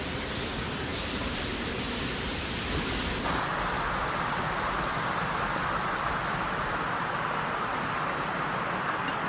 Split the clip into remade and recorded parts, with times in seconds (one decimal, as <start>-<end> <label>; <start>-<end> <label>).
0.0-9.3 recorded